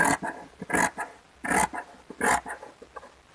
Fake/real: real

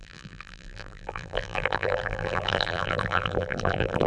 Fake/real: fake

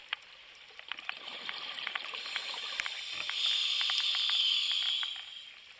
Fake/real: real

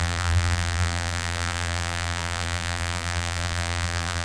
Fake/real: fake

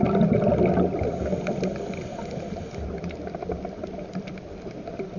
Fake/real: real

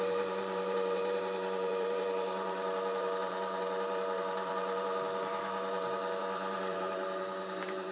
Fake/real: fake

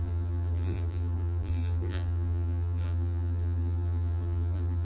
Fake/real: fake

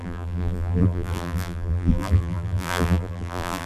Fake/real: fake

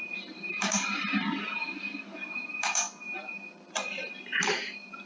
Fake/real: fake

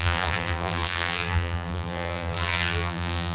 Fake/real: fake